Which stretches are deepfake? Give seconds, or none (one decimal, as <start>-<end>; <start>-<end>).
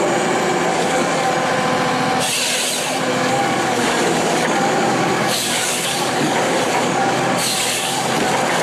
0.7-1.3; 3.1-8.1